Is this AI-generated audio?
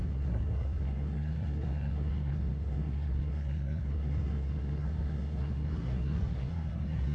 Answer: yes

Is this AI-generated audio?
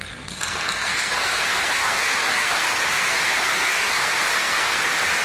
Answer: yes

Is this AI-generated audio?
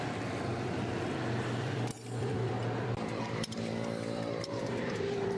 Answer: yes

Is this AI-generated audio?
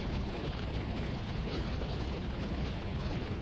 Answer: yes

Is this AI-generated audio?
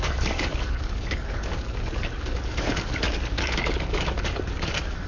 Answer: yes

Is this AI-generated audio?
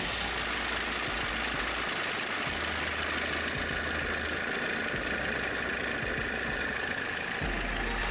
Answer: no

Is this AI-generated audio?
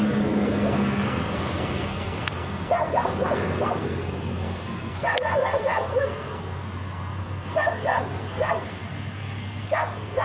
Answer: yes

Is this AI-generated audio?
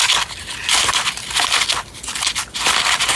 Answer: no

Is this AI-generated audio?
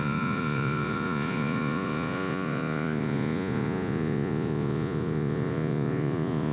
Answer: yes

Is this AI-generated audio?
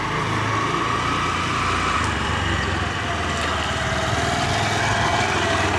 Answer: no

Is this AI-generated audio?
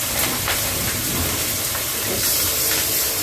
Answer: yes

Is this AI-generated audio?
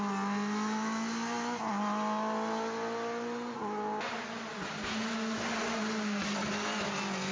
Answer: no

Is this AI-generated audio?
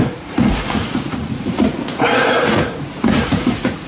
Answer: yes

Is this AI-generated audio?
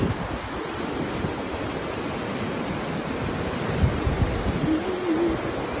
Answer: no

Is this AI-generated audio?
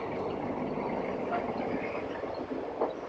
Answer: no